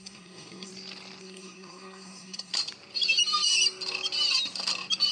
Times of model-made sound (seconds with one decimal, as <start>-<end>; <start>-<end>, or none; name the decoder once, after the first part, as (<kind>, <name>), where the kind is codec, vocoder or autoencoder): 0.0-0.7 (codec, SNAC); 1.2-2.5

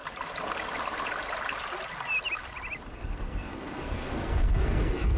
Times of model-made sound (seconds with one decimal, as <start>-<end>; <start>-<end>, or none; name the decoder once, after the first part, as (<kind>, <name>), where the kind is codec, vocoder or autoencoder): 2.9-5.2 (codec, SNAC)

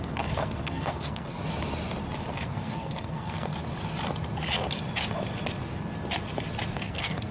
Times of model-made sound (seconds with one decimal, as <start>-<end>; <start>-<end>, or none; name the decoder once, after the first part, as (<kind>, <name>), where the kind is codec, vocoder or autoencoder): 0.0-1.4 (codec, SNAC); 2.3-3.5; 6.7-7.3

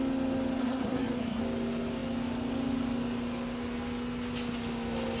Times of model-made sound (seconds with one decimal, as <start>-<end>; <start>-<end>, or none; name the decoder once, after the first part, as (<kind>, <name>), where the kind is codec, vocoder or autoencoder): 0.6-1.4 (codec, SNAC)

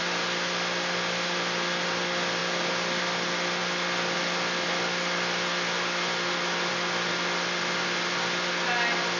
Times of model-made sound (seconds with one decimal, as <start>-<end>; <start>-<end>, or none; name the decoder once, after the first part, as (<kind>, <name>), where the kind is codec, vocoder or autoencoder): none

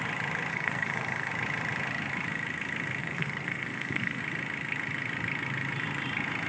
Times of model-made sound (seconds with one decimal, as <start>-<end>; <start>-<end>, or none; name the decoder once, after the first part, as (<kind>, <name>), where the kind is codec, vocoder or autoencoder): 0.5-1.3 (codec, SNAC); 3.0-4.2

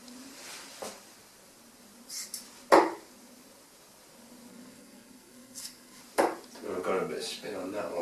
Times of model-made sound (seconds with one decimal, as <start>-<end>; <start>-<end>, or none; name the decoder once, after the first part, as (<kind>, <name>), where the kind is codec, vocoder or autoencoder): 4.5-6.0 (codec, SNAC)